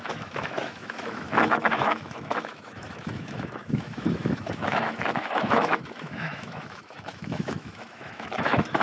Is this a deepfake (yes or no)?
yes